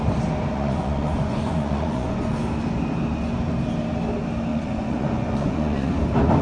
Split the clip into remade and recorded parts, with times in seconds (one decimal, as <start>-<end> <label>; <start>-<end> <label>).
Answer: 0.0-0.5 recorded; 0.5-2.3 remade; 2.3-4.5 recorded; 4.5-5.9 remade; 5.9-6.4 recorded

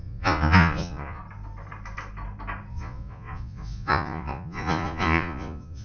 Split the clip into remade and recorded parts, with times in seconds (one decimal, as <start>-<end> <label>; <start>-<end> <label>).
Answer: 0.0-1.2 remade; 1.2-2.7 recorded; 2.7-5.8 remade

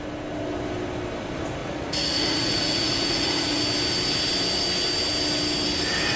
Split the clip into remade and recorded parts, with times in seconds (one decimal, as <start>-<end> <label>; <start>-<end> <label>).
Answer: 0.0-1.6 recorded; 1.6-3.6 remade; 3.6-6.2 recorded

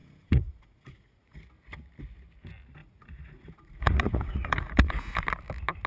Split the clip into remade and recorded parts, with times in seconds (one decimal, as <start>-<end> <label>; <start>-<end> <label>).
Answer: 0.0-1.4 remade; 1.4-2.8 recorded; 2.8-5.2 remade; 5.2-5.9 recorded

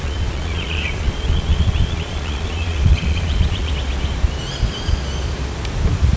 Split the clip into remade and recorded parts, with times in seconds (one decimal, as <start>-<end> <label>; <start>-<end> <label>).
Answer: 0.0-3.7 remade; 3.7-6.2 recorded

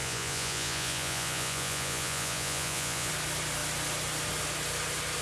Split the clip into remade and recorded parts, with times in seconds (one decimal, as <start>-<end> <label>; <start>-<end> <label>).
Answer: 0.0-3.1 remade; 3.1-5.2 recorded

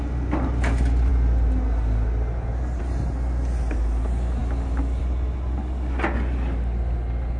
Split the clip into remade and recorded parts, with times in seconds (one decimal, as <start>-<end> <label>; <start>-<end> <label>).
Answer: 0.0-7.4 recorded